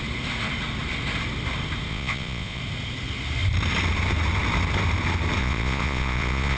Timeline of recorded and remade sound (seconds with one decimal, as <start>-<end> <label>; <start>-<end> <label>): 0.0-1.9 recorded; 1.9-2.6 remade; 2.6-5.4 recorded; 5.4-6.6 remade